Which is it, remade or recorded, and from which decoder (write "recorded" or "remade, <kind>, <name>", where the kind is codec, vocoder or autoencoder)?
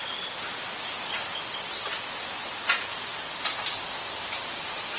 recorded